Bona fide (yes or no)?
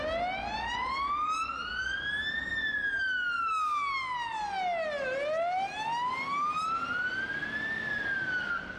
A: yes